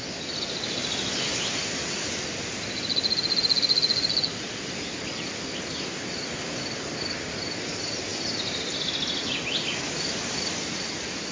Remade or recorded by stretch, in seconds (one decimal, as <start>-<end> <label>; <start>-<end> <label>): 0.0-11.3 recorded